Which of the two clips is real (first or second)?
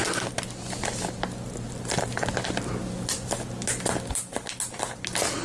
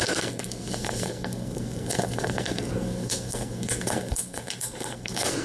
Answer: first